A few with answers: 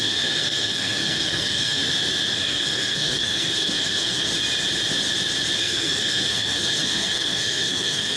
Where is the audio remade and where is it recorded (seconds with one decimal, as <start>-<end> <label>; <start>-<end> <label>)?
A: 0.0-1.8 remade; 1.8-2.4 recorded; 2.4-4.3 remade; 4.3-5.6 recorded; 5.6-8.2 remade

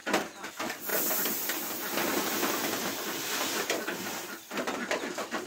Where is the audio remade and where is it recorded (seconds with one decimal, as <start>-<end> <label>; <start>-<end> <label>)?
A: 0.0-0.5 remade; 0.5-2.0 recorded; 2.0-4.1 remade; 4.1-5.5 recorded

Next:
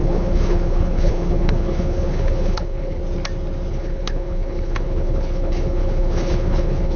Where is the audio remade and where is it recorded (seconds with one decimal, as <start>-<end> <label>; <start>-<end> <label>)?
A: 0.0-3.0 remade; 3.0-3.7 recorded; 3.7-7.0 remade

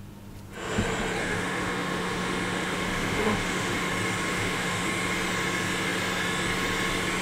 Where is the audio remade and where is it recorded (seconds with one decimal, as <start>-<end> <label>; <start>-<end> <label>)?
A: 0.0-1.2 recorded; 1.2-3.9 remade; 3.9-4.3 recorded; 4.3-4.9 remade; 4.9-7.2 recorded